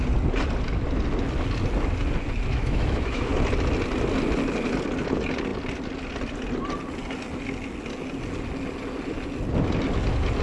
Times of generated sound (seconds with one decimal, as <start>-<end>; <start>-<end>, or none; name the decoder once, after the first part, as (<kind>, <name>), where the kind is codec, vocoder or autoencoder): 2.5-3.3 (autoencoder, DAC-VAE)

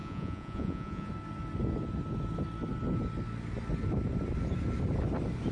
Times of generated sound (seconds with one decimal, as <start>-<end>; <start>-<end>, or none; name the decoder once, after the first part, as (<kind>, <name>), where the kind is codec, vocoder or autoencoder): 0.0-1.1 (vocoder, Vocos)

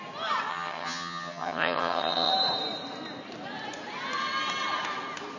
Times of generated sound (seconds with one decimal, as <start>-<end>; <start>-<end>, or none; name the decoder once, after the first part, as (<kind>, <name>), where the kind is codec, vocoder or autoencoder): 0.5-2.3 (vocoder, HiFi-GAN)

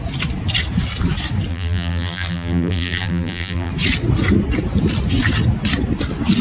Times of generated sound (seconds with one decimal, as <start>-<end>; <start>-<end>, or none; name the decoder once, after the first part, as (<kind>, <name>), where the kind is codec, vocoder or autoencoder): 1.5-3.7 (vocoder, BigVGAN v2)

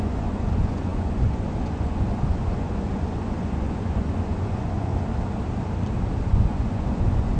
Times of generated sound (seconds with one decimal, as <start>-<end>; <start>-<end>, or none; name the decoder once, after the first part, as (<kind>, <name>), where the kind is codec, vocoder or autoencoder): 0.0-4.9 (vocoder, Vocos); 6.3-7.4